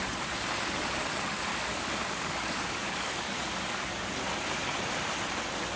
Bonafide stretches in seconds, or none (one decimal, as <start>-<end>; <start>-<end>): 0.0-1.5; 3.9-5.8